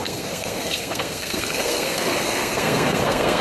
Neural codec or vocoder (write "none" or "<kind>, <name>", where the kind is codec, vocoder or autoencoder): codec, SNAC